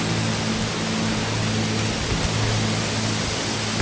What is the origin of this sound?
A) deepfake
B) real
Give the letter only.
B